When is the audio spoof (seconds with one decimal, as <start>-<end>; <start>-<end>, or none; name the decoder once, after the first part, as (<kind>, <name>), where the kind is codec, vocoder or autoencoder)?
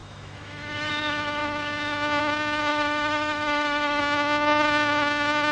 0.0-0.9 (autoencoder, DAC-VAE); 2.7-4.0